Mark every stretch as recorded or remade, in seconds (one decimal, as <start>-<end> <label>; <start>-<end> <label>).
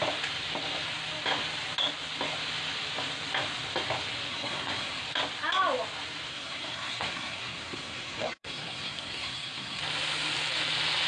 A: 0.0-4.3 recorded; 4.3-5.0 remade; 5.0-6.3 recorded; 6.3-9.8 remade; 9.8-11.1 recorded